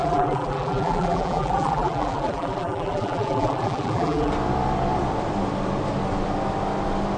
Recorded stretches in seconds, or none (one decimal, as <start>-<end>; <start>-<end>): 4.3-7.2